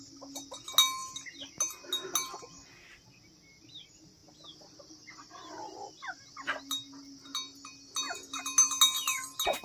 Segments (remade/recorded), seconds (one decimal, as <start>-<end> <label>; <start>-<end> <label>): 0.0-9.6 recorded